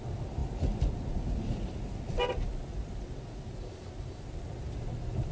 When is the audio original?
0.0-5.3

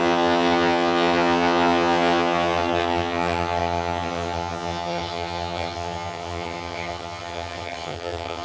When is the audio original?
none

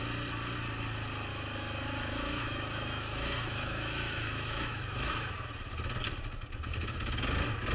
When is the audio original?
0.0-1.3; 5.3-7.7

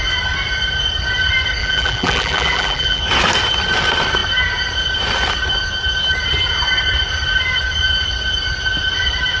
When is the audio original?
0.0-1.6; 3.0-9.4